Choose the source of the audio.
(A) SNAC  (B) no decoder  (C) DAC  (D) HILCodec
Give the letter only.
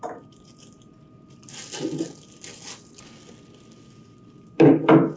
B